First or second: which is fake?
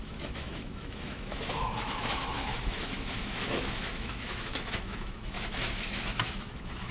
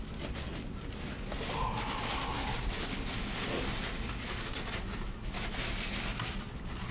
first